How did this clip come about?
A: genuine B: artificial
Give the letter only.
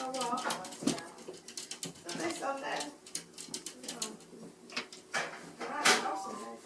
A